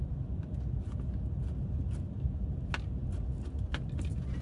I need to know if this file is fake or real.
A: real